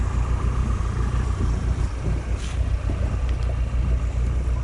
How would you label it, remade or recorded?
recorded